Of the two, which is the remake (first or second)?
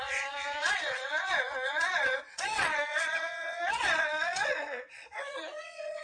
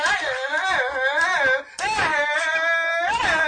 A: first